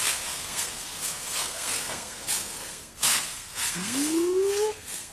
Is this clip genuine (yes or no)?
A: no